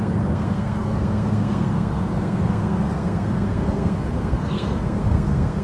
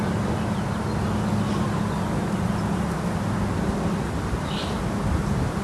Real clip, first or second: second